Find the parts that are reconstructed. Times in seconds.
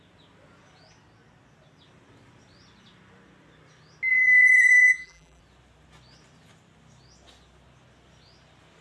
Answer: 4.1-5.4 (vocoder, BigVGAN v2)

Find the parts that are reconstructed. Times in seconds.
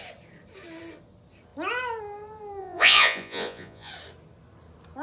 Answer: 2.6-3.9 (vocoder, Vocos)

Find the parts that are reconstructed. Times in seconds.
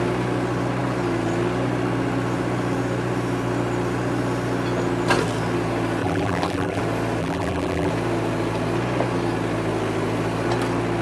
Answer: 6.0-6.8 (vocoder, BigVGAN v2); 7.2-7.9